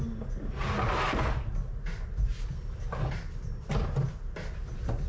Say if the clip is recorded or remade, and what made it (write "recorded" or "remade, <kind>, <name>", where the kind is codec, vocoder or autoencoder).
recorded